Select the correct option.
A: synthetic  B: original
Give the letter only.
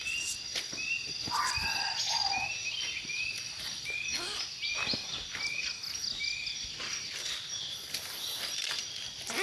B